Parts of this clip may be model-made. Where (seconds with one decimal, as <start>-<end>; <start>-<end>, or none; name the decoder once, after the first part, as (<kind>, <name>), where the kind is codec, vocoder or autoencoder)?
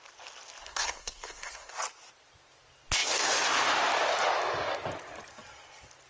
0.6-1.7 (codec, SNAC)